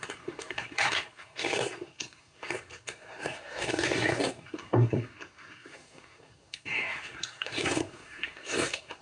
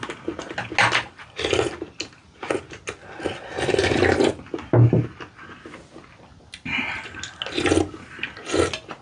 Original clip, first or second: second